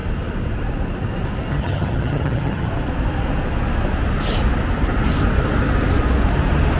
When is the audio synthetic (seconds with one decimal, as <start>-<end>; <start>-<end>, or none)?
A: 1.5-2.7